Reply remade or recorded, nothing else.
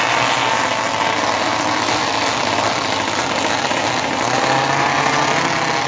recorded